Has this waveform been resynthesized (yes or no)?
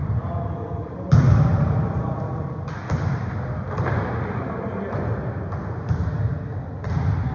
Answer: no